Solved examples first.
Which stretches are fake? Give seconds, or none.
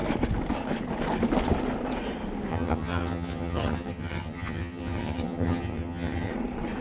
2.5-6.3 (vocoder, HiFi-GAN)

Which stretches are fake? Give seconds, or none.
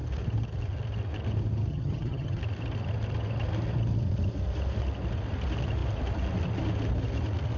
1.7-2.4 (vocoder, HiFi-GAN)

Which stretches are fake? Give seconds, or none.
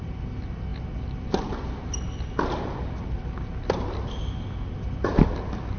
none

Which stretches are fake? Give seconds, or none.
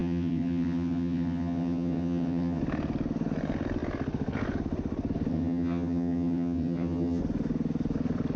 0.0-2.6 (vocoder, HiFi-GAN); 5.3-7.2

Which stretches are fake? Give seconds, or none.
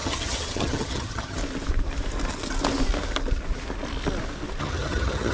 0.0-1.4 (vocoder, HiFi-GAN); 4.6-5.3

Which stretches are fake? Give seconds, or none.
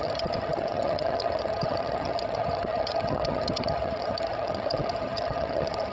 0.0-5.9 (vocoder, HiFi-GAN)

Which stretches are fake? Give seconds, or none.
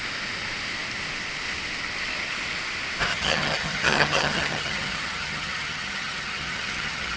3.1-7.2 (vocoder, HiFi-GAN)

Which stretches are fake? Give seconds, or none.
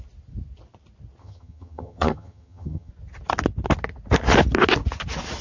1.2-2.9 (vocoder, HiFi-GAN)